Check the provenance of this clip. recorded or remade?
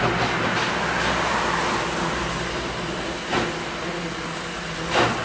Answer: recorded